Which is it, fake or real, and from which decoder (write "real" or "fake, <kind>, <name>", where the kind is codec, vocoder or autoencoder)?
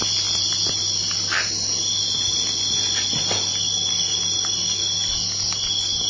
real